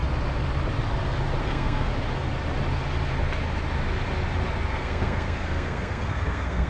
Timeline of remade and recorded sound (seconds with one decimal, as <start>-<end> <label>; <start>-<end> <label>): 0.0-1.4 recorded; 1.4-1.9 remade; 1.9-4.7 recorded; 4.7-6.7 remade